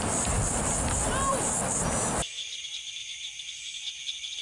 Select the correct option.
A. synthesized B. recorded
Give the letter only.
B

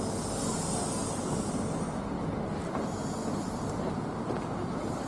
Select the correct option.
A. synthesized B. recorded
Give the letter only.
B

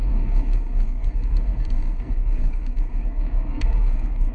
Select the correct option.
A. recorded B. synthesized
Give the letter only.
B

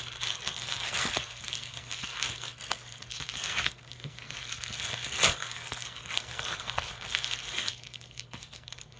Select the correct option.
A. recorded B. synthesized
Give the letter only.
B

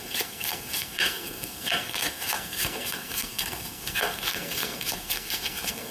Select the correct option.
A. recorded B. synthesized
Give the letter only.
B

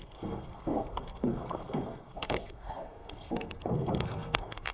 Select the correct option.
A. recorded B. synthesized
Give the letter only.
B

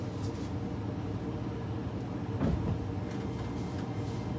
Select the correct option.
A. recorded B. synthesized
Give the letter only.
A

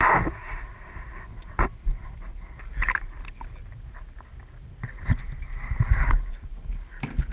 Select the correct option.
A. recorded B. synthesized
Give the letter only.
A